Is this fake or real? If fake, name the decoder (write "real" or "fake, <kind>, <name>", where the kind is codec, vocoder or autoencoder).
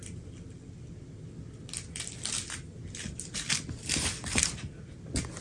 real